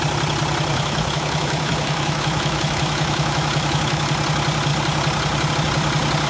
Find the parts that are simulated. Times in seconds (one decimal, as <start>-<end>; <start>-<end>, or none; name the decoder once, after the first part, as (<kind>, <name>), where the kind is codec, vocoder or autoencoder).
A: 0.7-4.1 (autoencoder, DAC-VAE)